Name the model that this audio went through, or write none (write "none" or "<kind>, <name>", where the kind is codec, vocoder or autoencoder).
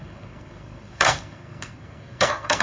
codec, SNAC